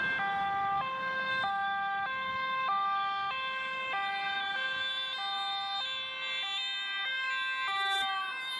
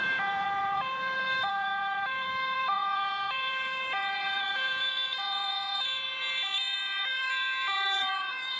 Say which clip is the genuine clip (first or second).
first